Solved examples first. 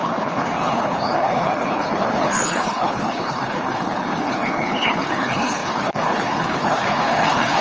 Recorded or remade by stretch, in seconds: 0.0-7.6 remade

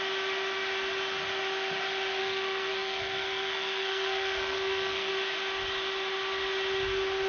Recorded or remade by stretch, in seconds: 0.0-2.2 recorded; 2.2-5.1 remade; 5.1-7.3 recorded

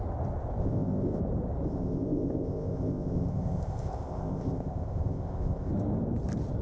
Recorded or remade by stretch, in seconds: 0.0-0.6 recorded; 0.6-1.2 remade; 1.2-1.7 recorded; 1.7-5.7 remade; 5.7-6.6 recorded

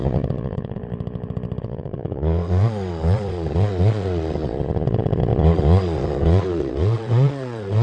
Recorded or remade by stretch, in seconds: 0.0-0.8 remade; 0.8-1.6 recorded; 1.6-7.8 remade

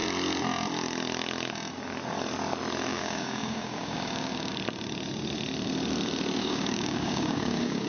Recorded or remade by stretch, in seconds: 0.0-2.9 recorded; 2.9-4.5 remade; 4.5-6.4 recorded; 6.4-7.9 remade

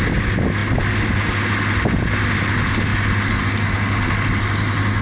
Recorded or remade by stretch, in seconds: 0.0-5.0 recorded

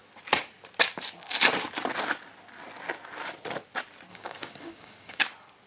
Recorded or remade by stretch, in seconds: 0.0-4.1 recorded; 4.1-5.2 remade; 5.2-5.7 recorded

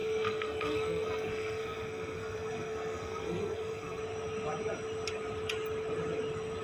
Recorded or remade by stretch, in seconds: 0.0-4.0 remade; 4.0-6.6 recorded